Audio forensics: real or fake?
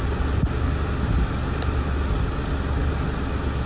real